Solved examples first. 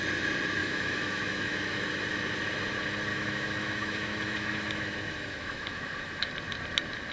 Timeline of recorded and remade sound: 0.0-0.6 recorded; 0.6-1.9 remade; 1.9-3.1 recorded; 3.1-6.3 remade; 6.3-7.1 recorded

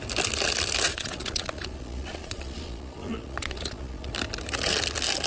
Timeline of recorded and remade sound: 0.0-0.9 recorded; 0.9-4.1 remade; 4.1-5.3 recorded

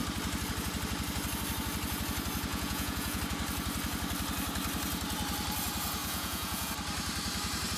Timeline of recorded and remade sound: 0.0-2.5 recorded; 2.5-3.2 remade; 3.2-6.0 recorded; 6.0-6.7 remade; 6.7-7.8 recorded

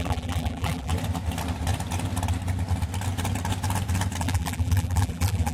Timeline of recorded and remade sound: 0.0-0.9 remade; 0.9-4.2 recorded; 4.2-5.5 remade